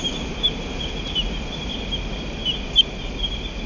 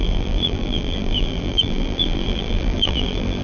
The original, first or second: first